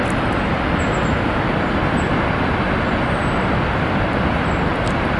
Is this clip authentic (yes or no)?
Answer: yes